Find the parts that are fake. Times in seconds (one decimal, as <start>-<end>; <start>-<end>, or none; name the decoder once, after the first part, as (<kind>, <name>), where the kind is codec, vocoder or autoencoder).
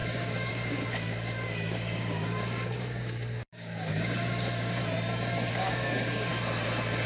0.0-4.8 (codec, DAC); 5.5-6.3